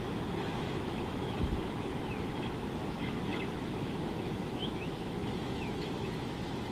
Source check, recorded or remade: remade